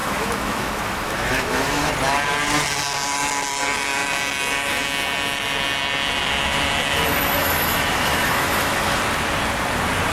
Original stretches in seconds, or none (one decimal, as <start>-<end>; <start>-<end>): 1.9-7.4; 9.0-10.1

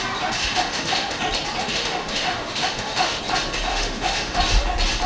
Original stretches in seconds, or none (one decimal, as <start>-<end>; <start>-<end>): 0.0-0.4; 1.2-1.6; 3.2-3.7; 4.4-5.1

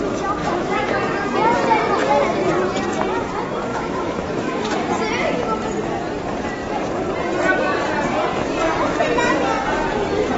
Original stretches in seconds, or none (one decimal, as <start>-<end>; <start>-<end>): 0.0-0.4; 1.0-3.7; 4.6-10.4

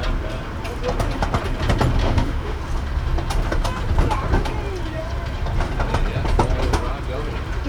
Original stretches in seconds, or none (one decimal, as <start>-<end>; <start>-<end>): 0.0-2.0; 2.6-7.7